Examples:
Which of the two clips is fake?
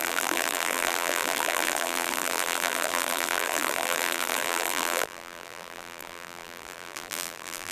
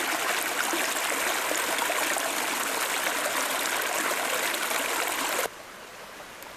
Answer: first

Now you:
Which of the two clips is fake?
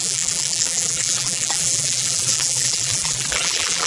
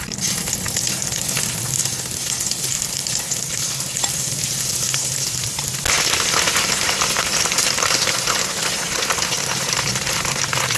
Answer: first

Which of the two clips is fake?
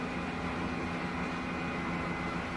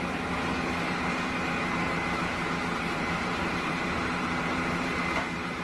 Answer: second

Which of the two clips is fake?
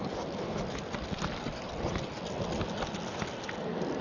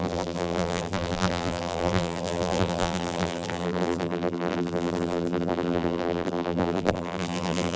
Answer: second